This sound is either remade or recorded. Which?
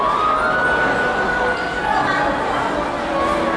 recorded